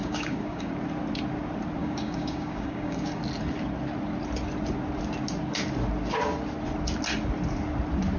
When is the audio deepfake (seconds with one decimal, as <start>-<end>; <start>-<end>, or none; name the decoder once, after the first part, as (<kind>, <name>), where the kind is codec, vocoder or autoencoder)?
0.0-0.7 (codec, DAC); 1.8-3.2